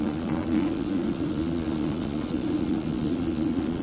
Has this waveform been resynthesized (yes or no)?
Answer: yes